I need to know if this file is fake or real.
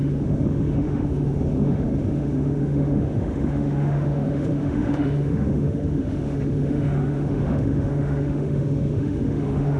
fake